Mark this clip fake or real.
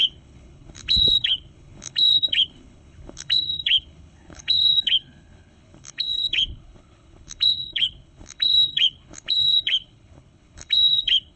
fake